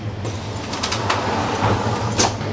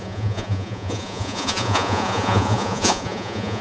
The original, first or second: first